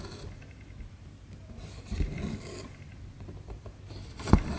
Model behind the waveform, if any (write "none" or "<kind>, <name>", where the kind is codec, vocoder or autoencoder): none